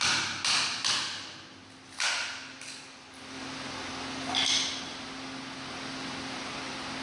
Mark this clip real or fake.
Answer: real